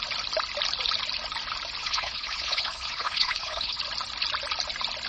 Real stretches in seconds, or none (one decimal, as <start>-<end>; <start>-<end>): 0.0-1.8; 3.8-5.1